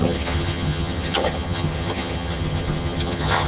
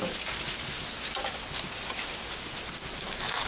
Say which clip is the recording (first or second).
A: second